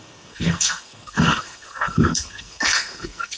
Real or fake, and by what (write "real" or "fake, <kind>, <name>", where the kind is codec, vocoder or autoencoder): fake, codec, SNAC